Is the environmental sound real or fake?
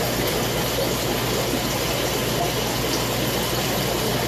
real